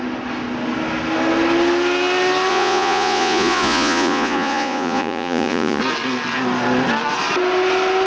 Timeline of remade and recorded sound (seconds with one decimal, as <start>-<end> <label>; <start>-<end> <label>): 0.0-2.5 recorded; 2.5-5.8 remade; 5.8-8.1 recorded